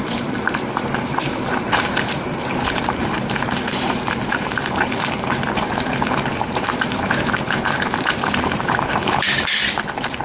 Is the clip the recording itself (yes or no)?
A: no